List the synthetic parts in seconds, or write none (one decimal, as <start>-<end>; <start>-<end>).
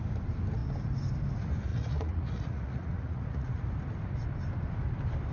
1.7-3.7